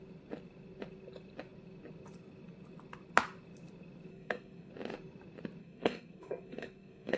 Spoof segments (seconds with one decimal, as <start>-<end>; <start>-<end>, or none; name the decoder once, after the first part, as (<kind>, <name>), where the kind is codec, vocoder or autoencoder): 4.1-4.7 (codec, SNAC); 5.6-7.2